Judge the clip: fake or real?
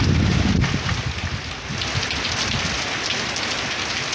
real